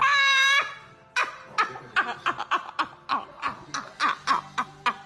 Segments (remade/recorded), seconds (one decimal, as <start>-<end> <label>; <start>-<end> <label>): 0.0-5.1 recorded